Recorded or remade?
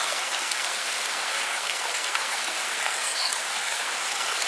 remade